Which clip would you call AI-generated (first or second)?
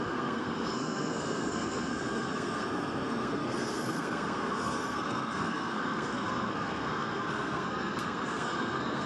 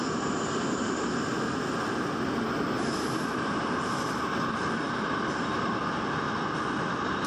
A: first